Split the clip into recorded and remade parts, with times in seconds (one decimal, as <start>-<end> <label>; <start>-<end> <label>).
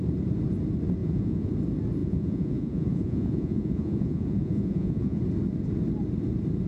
0.0-1.0 recorded; 1.0-1.5 remade; 1.5-2.0 recorded; 2.0-5.2 remade; 5.2-6.7 recorded